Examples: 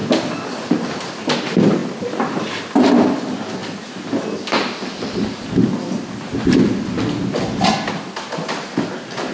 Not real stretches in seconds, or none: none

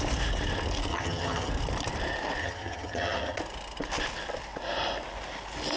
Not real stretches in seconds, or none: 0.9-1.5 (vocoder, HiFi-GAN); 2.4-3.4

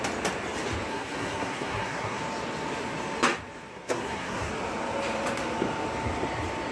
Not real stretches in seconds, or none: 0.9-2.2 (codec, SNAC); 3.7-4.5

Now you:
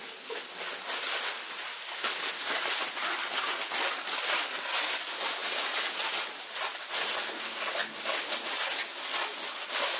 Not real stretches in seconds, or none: none

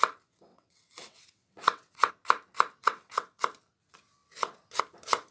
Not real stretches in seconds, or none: 0.5-2.1 (vocoder, WaveNeXt); 2.8-3.4

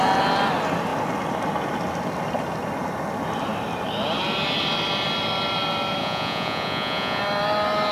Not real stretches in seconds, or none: 6.0-7.2 (vocoder, Vocos)